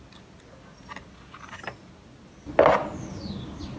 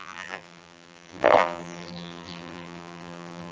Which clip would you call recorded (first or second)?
first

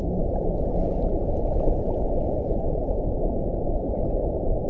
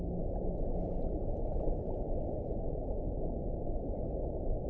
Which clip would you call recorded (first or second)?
second